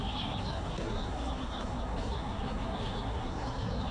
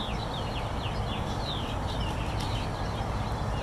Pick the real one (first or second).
second